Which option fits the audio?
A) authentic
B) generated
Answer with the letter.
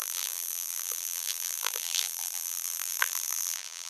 B